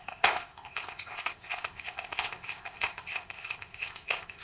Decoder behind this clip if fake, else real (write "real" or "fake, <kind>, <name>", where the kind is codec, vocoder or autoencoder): fake, codec, ZipCodec